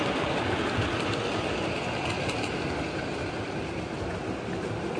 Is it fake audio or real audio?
fake